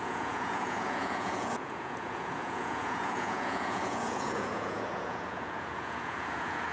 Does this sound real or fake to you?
fake